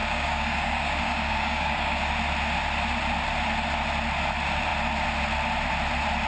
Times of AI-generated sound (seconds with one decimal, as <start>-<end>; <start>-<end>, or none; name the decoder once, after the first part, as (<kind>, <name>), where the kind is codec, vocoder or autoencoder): 0.0-2.1 (codec, DAC)